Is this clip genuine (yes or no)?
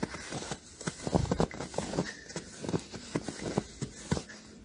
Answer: yes